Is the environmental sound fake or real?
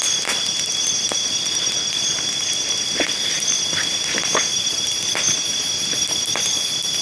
real